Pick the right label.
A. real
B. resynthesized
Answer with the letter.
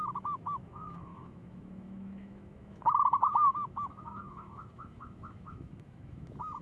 B